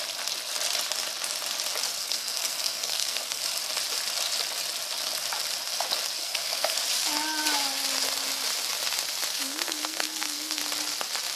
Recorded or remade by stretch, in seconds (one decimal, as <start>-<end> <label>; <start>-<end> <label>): 0.0-1.8 recorded; 1.8-3.4 remade; 3.4-6.2 recorded; 6.2-6.8 remade; 6.8-9.3 recorded; 9.3-10.6 remade; 10.6-11.4 recorded